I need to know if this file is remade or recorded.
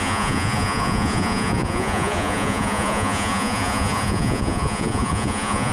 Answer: remade